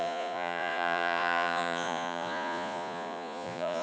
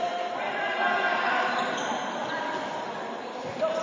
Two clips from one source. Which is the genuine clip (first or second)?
second